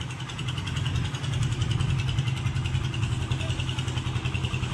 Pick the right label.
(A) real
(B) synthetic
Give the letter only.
A